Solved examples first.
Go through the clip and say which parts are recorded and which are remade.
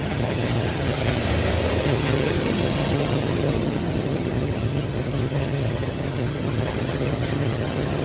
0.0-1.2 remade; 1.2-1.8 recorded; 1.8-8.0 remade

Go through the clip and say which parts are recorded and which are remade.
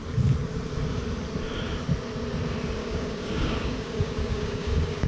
0.0-2.8 recorded; 2.8-5.1 remade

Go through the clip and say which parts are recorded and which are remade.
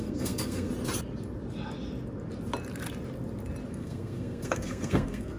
0.0-0.7 remade; 0.7-3.7 recorded; 3.7-5.4 remade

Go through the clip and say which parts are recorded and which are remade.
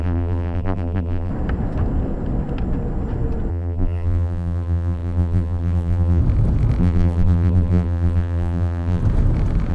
0.0-1.3 remade; 1.3-3.5 recorded; 3.5-6.2 remade; 6.2-6.8 recorded; 6.8-9.0 remade; 9.0-9.7 recorded